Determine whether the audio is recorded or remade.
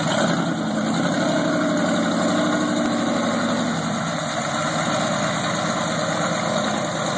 recorded